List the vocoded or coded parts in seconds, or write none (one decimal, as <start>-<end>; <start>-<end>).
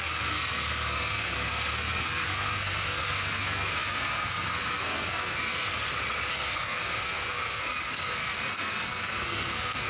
0.0-5.7; 6.3-9.9